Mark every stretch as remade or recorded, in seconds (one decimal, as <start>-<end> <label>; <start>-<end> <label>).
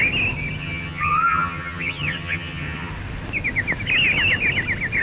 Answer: 0.0-0.6 recorded; 0.6-2.9 remade; 2.9-5.0 recorded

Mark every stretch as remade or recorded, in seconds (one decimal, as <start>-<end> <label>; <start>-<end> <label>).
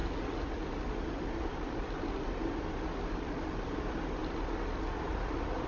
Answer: 0.0-5.7 recorded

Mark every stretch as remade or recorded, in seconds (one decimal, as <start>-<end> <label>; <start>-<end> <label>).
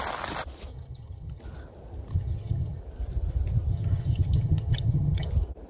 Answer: 0.0-0.7 recorded; 0.7-1.4 remade; 1.4-2.1 recorded; 2.1-2.8 remade; 2.8-3.7 recorded; 3.7-5.3 remade; 5.3-5.7 recorded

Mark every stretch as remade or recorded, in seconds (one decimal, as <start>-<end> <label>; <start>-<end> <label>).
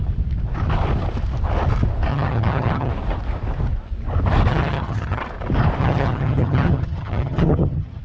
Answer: 0.0-2.1 recorded; 2.1-2.9 remade; 2.9-4.5 recorded; 4.5-5.2 remade; 5.2-5.8 recorded; 5.8-8.0 remade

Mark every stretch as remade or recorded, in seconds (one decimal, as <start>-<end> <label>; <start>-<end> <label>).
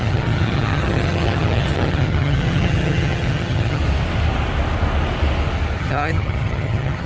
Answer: 0.0-3.8 remade; 3.8-5.8 recorded; 5.8-7.1 remade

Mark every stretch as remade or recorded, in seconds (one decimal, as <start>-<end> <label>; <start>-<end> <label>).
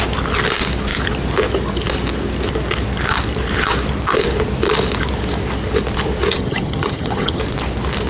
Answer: 0.0-6.3 recorded; 6.3-7.4 remade; 7.4-8.1 recorded